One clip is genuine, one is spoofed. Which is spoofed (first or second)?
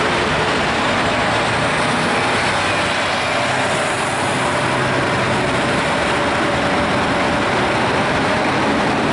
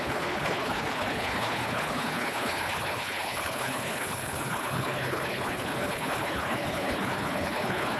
second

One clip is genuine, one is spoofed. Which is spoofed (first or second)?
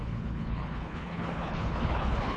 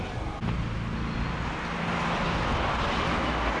first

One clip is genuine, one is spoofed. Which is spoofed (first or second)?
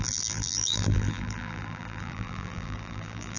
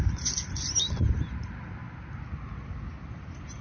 first